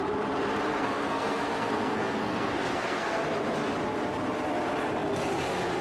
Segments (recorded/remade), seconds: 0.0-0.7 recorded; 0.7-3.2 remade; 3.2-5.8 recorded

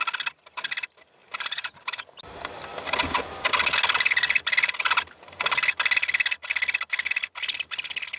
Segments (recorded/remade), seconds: 0.0-1.2 recorded; 1.2-1.9 remade; 1.9-8.2 recorded

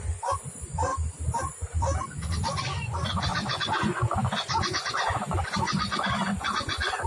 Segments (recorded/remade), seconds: 0.0-0.9 remade; 0.9-1.4 recorded; 1.4-7.1 remade

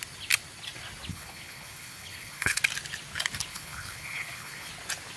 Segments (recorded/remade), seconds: 0.0-1.1 recorded; 1.1-2.6 remade; 2.6-3.5 recorded; 3.5-4.7 remade; 4.7-5.2 recorded

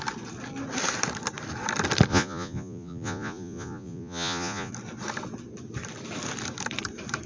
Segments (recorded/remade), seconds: 0.0-2.1 recorded; 2.1-4.7 remade; 4.7-7.3 recorded

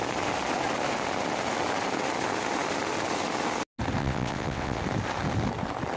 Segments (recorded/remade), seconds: 0.0-4.0 recorded; 4.0-4.8 remade; 4.8-6.0 recorded

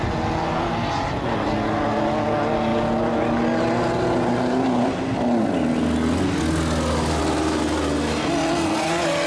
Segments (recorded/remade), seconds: 0.0-9.3 recorded

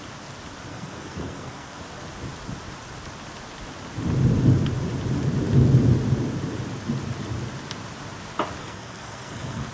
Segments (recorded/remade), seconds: 0.0-0.7 recorded; 0.7-1.8 remade; 1.8-8.6 recorded; 8.6-9.7 remade